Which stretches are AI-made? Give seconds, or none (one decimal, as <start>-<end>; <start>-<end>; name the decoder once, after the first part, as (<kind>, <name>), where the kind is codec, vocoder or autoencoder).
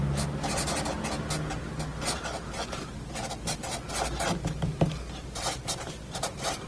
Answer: none